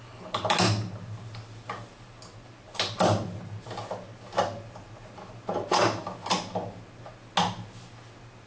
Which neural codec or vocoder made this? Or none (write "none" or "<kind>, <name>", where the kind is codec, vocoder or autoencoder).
none